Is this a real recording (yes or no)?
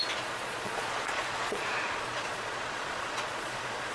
no